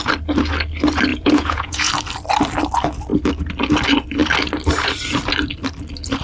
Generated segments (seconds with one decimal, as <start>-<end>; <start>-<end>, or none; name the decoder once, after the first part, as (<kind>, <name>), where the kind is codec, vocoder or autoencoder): 1.1-1.9 (vocoder, Vocos)

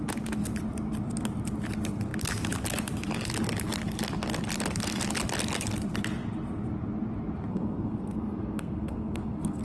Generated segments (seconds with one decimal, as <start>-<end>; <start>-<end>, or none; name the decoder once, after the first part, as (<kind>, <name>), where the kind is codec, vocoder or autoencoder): 7.5-9.6 (codec, SNAC)

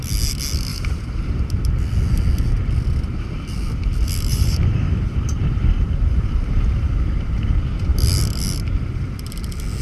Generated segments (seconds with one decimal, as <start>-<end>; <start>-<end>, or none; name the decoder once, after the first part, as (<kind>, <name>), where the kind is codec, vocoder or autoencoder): 0.7-1.3 (vocoder, BigVGAN v2); 4.3-6.9